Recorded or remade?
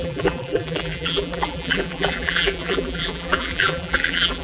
remade